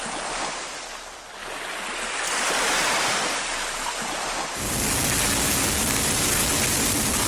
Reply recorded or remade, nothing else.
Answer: recorded